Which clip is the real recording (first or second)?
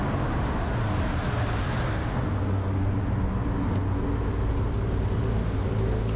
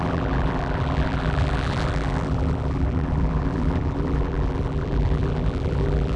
first